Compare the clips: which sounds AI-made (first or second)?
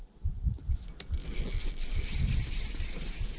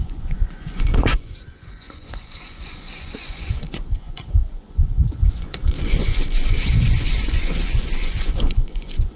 second